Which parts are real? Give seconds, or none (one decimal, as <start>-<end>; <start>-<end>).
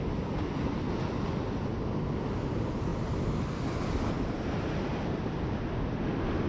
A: 0.0-6.5